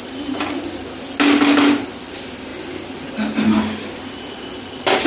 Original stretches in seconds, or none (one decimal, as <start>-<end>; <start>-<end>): 0.0-5.1